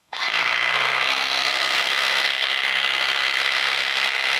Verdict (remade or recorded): remade